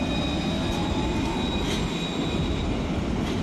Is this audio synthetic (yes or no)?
no